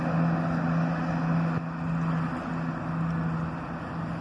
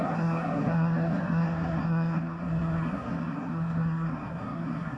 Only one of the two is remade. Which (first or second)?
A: second